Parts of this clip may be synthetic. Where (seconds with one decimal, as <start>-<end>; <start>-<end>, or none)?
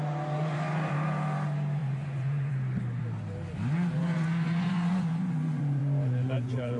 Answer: 1.8-2.5; 4.0-6.8